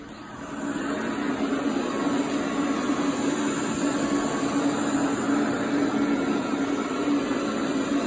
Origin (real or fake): real